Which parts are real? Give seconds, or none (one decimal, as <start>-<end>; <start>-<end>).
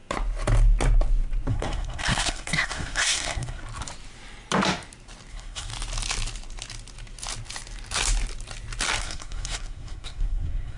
0.0-1.5; 3.6-5.3; 5.7-9.0